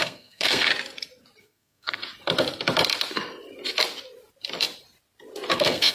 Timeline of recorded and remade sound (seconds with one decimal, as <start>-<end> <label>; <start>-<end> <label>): 0.0-0.7 remade; 0.7-1.4 recorded; 1.4-2.0 remade; 2.0-5.5 recorded; 5.5-5.9 remade